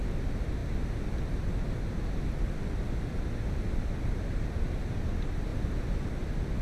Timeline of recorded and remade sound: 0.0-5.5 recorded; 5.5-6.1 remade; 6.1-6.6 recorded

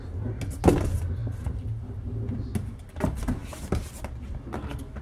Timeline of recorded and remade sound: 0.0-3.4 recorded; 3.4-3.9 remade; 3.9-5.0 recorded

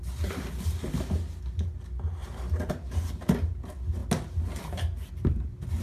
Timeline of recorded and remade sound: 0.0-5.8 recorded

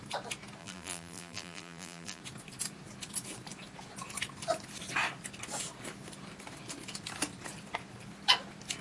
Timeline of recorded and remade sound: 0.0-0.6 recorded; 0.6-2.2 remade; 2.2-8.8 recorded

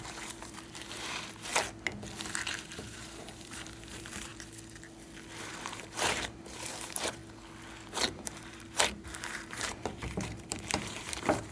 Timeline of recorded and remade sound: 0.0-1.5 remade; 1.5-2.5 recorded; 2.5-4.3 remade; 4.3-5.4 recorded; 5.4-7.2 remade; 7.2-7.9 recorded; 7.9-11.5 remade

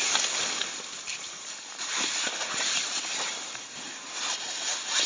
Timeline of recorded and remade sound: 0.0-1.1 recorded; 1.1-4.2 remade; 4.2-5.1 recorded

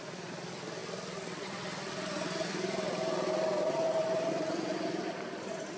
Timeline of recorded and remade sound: 0.0-5.8 remade